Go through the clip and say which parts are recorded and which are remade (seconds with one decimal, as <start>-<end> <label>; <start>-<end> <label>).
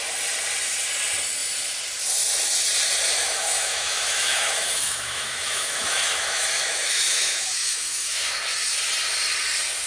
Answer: 0.0-3.2 recorded; 3.2-8.4 remade; 8.4-9.9 recorded